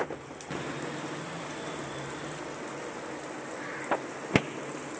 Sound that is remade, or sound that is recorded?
recorded